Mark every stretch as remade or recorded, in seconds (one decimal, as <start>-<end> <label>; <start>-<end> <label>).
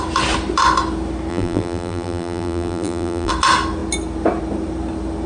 0.0-1.3 recorded; 1.3-3.3 remade; 3.3-5.3 recorded